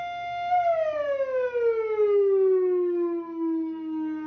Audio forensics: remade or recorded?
recorded